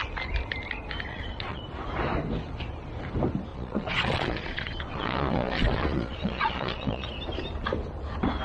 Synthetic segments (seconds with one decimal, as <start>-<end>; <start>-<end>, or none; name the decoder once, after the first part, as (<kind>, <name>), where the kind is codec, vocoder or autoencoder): 1.1-1.6 (vocoder, Vocos); 3.5-7.1